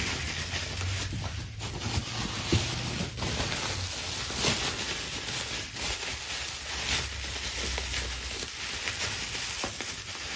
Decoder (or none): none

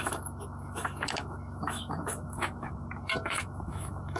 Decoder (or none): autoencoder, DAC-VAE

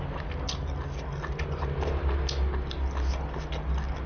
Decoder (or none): none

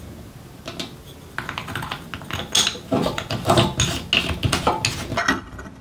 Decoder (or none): none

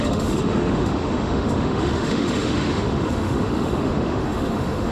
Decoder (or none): autoencoder, DAC-VAE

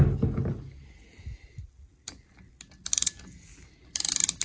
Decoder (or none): none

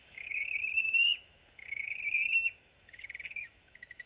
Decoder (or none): autoencoder, DAC-VAE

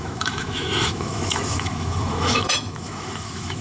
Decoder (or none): autoencoder, DAC-VAE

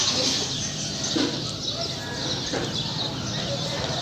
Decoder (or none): none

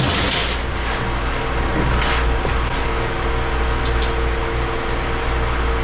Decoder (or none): none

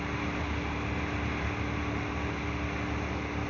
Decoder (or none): none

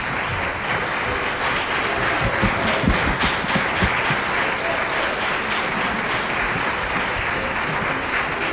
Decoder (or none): none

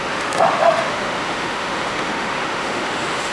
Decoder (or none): autoencoder, DAC-VAE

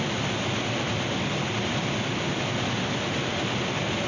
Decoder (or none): none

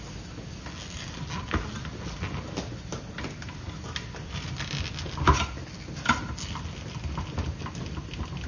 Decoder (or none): none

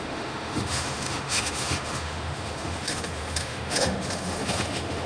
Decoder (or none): autoencoder, DAC-VAE